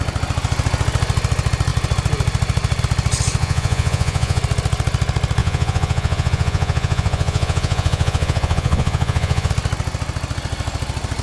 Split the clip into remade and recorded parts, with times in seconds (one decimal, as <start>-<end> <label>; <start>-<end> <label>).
0.0-3.4 recorded; 3.4-4.4 remade; 4.4-5.4 recorded; 5.4-9.5 remade; 9.5-11.2 recorded